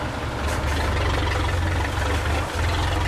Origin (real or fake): real